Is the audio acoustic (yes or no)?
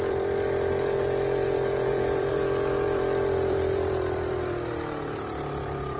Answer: no